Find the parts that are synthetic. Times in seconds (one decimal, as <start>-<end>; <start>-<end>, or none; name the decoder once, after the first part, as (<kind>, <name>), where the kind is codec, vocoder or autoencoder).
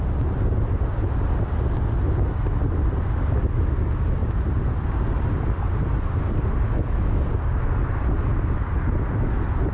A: none